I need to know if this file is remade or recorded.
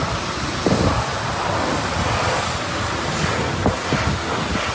recorded